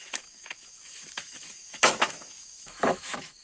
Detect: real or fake fake